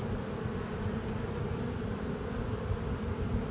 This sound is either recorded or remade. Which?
recorded